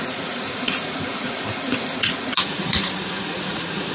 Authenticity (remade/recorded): remade